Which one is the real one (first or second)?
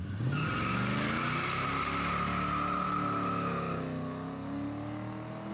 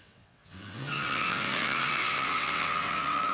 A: first